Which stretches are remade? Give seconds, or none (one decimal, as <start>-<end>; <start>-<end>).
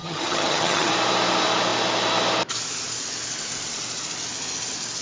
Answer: 0.0-0.9